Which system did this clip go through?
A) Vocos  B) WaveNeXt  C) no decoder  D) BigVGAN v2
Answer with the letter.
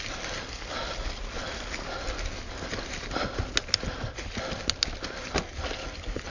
C